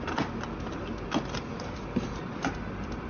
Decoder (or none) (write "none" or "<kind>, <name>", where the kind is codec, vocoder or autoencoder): none